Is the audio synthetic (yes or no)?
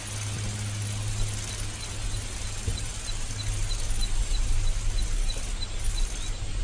no